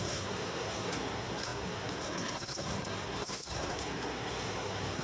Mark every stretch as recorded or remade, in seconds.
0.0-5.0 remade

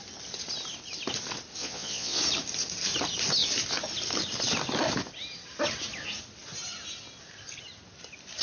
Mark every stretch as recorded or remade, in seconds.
0.0-1.6 recorded; 1.6-2.2 remade; 2.2-8.4 recorded

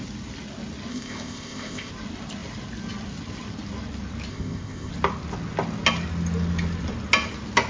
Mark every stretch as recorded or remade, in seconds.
0.0-0.9 recorded; 0.9-1.9 remade; 1.9-4.3 recorded; 4.3-4.9 remade; 4.9-7.7 recorded

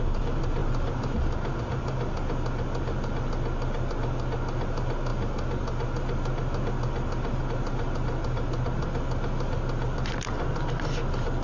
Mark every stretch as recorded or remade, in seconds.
0.0-11.4 recorded